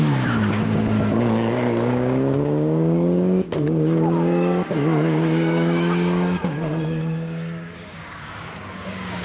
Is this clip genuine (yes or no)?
no